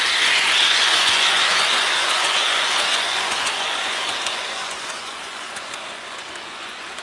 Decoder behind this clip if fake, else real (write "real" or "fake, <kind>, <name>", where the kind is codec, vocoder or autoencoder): fake, vocoder, Vocos